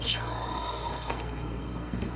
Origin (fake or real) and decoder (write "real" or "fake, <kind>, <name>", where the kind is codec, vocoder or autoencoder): fake, codec, SNAC